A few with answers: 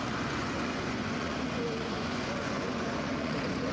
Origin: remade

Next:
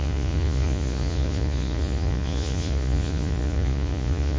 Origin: remade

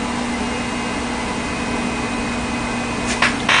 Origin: recorded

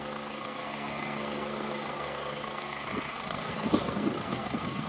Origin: remade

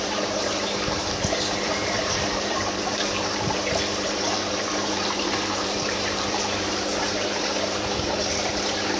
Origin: remade